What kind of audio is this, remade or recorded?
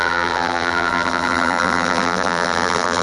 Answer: remade